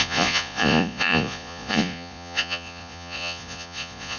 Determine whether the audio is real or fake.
fake